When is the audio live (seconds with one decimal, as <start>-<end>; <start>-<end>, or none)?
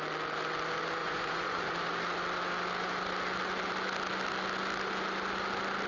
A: 0.0-1.0; 1.6-5.9